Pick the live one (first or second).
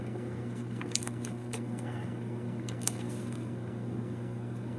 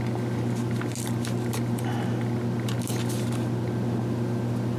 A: second